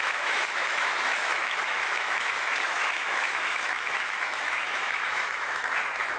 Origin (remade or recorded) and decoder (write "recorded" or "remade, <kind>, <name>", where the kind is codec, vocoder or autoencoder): remade, autoencoder, DAC-VAE